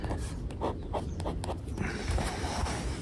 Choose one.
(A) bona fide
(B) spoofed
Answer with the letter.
A